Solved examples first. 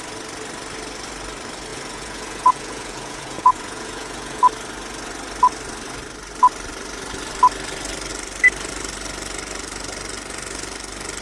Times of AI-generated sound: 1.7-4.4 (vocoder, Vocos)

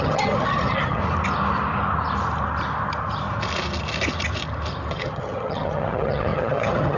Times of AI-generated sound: 0.0-1.0 (vocoder, HiFi-GAN); 4.9-7.0